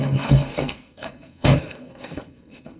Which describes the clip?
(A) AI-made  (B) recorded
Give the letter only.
A